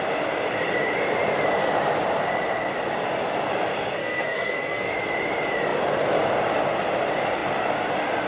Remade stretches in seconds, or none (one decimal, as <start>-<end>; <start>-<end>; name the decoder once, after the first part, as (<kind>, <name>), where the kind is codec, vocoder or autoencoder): 4.0-4.9 (codec, SNAC)